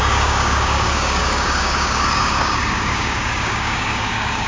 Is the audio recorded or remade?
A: remade